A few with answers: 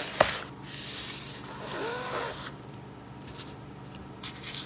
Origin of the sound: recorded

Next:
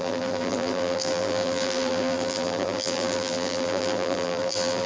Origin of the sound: remade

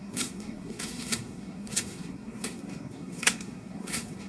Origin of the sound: remade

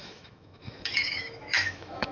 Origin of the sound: remade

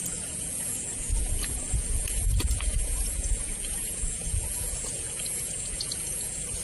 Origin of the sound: remade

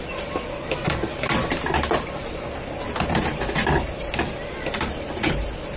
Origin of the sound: remade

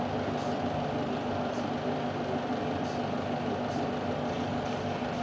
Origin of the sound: recorded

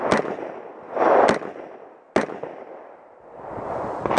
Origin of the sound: recorded